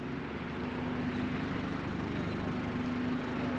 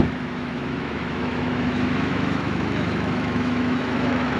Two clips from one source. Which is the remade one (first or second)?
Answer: second